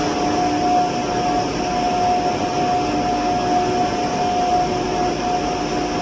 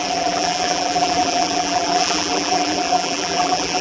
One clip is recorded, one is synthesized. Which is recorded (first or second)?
first